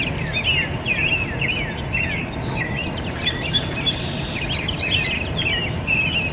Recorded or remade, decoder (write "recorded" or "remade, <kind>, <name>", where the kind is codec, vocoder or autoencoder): recorded